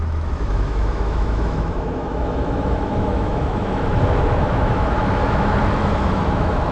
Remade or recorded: remade